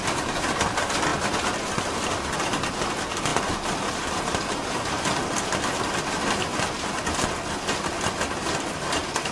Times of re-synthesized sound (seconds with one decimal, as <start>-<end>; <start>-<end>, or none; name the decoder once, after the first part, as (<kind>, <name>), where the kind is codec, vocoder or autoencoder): none